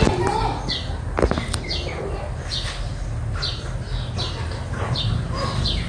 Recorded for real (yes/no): yes